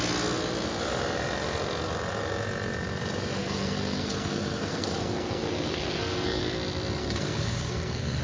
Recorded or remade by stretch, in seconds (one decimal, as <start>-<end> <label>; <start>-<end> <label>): 0.0-3.4 recorded; 3.4-6.4 remade; 6.4-7.0 recorded; 7.0-8.2 remade